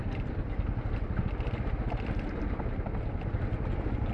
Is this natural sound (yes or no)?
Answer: yes